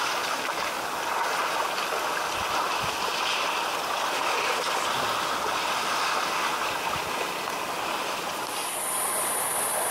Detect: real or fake fake